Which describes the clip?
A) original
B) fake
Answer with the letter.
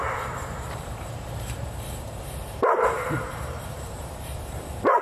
B